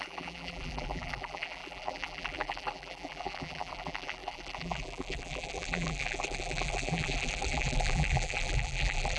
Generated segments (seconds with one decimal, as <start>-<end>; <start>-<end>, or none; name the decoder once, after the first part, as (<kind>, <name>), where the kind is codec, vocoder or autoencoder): 0.0-9.2 (vocoder, BigVGAN v2)